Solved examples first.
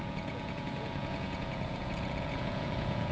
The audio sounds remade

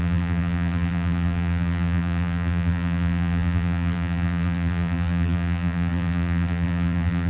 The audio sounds remade